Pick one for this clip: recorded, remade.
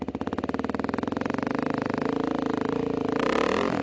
recorded